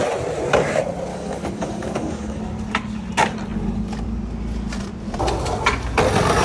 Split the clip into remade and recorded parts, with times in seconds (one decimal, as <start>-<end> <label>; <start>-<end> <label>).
0.0-1.1 recorded; 1.1-2.4 remade; 2.4-6.4 recorded